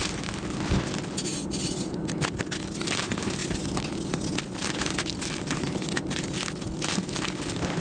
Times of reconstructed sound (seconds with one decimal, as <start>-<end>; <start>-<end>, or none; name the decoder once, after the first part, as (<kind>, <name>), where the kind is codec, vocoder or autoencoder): none